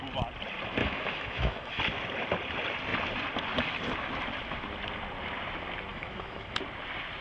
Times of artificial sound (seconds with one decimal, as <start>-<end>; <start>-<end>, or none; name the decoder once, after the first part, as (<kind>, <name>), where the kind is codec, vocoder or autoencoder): 0.8-1.8 (autoencoder, DAC-VAE); 5.9-6.6